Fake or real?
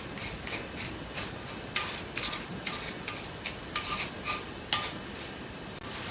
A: real